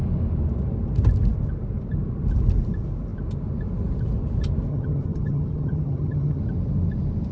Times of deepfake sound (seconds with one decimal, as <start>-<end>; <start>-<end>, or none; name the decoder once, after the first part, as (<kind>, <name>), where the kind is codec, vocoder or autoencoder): 4.7-6.4 (vocoder, HiFi-GAN)